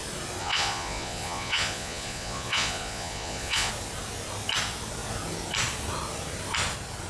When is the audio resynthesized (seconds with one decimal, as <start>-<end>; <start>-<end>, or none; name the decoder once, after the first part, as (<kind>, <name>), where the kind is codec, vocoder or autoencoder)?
0.4-3.7 (vocoder, Vocos)

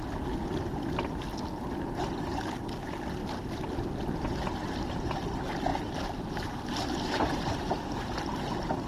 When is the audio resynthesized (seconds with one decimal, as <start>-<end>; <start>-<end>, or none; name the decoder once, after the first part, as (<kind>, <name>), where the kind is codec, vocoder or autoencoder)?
1.3-2.0 (vocoder, BigVGAN v2); 3.2-4.4

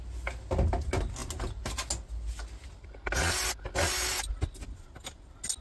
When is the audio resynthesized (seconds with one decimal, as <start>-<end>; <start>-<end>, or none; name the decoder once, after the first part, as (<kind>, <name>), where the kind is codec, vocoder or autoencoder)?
none

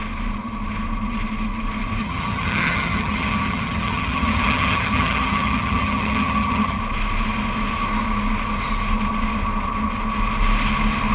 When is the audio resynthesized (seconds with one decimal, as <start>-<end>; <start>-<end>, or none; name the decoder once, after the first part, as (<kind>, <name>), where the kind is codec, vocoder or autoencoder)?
2.0-6.8 (vocoder, HiFi-GAN)

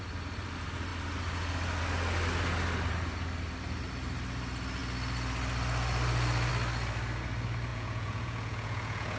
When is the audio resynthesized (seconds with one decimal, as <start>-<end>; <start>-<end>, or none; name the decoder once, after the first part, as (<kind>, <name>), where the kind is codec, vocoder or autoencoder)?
7.7-9.2 (vocoder, Vocos)